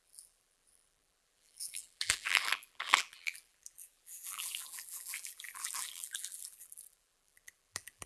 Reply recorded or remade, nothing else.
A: remade